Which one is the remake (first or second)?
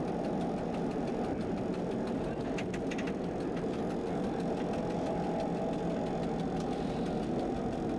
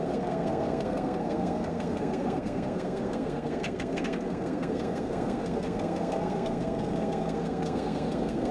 second